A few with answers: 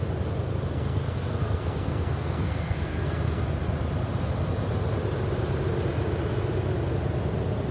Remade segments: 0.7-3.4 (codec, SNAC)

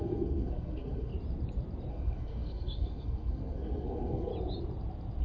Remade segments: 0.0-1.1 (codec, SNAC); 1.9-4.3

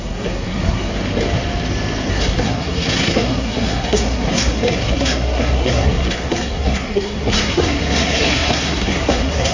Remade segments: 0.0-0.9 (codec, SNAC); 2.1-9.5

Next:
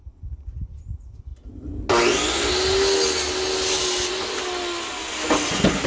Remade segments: none

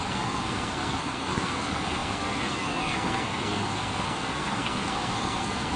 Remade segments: 0.0-5.8 (codec, SNAC)